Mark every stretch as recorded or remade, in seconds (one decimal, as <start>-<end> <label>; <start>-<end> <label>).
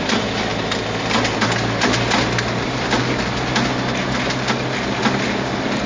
0.0-5.9 recorded